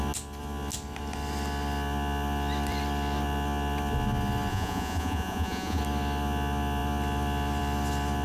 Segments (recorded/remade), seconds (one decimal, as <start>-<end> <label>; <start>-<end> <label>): 0.0-4.5 recorded; 4.5-5.8 remade; 5.8-8.2 recorded